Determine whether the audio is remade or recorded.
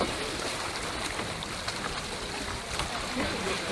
recorded